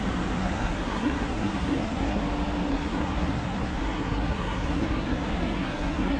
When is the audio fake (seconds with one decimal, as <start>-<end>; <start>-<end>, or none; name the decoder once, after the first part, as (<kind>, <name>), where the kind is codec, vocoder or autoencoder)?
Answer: 0.4-2.2 (codec, SNAC); 2.7-6.2